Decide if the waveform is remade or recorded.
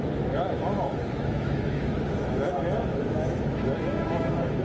remade